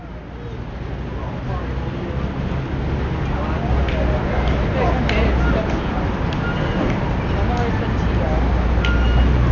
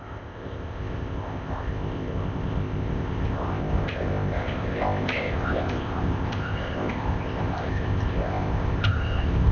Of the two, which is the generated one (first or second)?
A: second